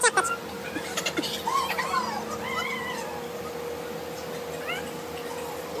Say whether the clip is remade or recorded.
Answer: recorded